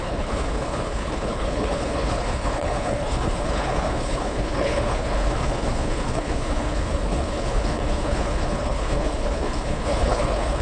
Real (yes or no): no